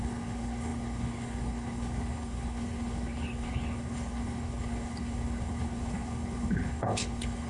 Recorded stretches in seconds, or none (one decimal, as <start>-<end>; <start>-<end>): none